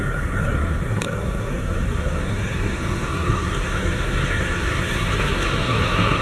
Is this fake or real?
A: fake